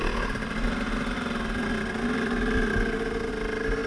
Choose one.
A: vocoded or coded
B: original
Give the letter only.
B